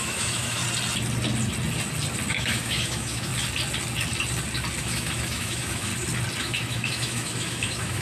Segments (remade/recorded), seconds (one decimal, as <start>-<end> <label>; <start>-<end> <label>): 0.0-0.6 remade; 0.6-2.3 recorded; 2.3-3.3 remade; 3.3-4.8 recorded; 4.8-5.9 remade; 5.9-6.4 recorded; 6.4-8.0 remade